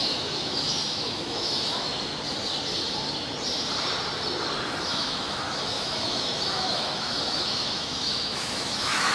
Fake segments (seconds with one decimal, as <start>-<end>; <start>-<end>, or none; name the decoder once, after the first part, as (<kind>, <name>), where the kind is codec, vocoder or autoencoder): 0.0-2.1 (autoencoder, DAC-VAE); 4.8-9.1